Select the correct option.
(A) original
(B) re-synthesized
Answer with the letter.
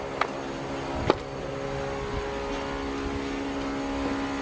A